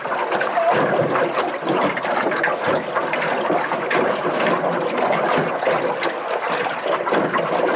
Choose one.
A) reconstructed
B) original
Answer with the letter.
B